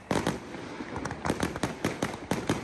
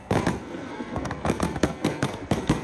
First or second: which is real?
first